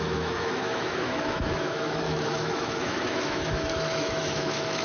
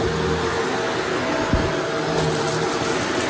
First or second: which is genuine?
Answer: second